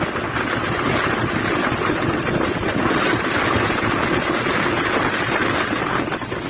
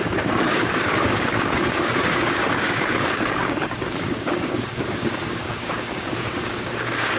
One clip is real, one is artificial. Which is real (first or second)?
first